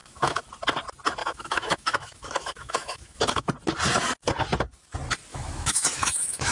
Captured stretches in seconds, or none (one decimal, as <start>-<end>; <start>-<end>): 0.5-1.2; 3.5-5.3